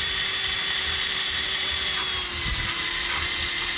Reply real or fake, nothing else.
real